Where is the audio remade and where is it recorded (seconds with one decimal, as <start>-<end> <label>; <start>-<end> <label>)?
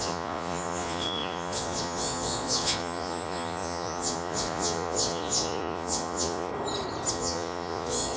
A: 0.0-6.5 remade; 6.5-7.1 recorded; 7.1-8.2 remade